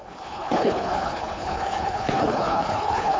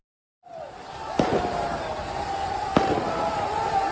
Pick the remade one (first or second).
first